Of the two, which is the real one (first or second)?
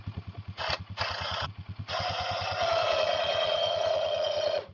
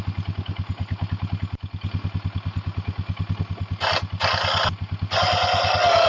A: second